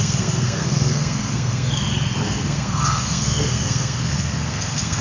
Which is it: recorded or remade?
remade